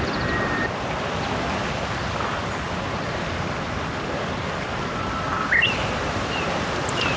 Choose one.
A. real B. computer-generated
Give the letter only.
A